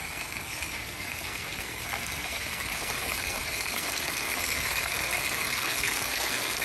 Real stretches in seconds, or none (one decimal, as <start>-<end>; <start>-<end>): none